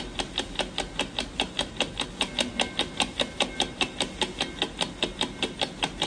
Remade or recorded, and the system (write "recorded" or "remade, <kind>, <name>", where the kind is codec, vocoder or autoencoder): recorded